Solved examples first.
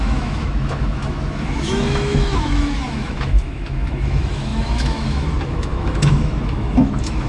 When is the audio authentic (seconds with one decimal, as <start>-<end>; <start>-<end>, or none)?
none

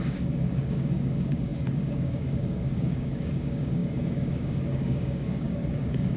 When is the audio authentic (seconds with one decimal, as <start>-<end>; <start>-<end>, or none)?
none

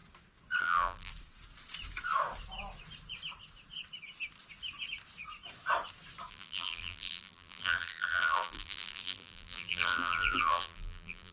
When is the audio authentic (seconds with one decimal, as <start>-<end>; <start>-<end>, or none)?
0.0-0.6; 1.1-6.3

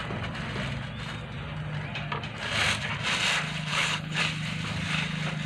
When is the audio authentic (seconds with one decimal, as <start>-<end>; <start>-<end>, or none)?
0.0-3.7; 4.2-5.5